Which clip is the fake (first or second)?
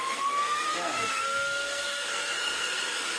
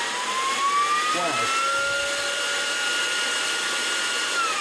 first